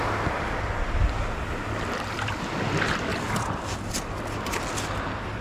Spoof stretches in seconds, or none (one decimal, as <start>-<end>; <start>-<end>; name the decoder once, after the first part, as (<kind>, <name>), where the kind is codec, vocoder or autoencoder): none